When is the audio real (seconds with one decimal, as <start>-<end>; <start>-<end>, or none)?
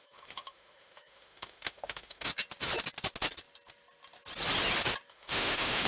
2.3-5.1